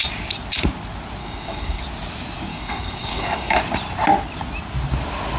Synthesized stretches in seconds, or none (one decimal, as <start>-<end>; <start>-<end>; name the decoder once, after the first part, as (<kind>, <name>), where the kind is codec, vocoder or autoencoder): 1.2-1.8 (codec, DAC); 2.5-3.6